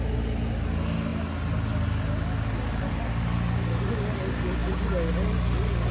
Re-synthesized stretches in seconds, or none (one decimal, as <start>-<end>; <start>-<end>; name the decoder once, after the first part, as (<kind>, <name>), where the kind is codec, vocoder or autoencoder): none